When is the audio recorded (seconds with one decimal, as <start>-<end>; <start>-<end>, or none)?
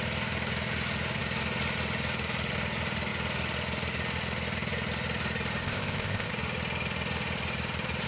0.0-5.6; 6.3-8.1